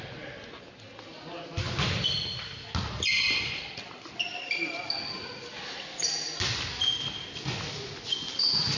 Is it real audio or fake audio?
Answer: real